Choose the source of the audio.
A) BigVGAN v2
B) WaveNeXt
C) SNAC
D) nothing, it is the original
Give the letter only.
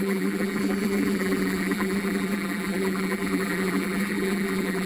A